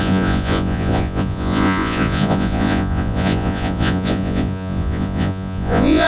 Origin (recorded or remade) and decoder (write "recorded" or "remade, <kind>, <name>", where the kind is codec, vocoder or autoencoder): remade, vocoder, Vocos